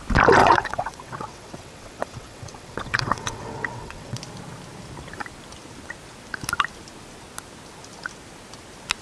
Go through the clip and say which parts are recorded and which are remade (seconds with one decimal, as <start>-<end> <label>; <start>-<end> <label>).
0.0-0.4 recorded; 0.4-4.2 remade; 4.2-9.0 recorded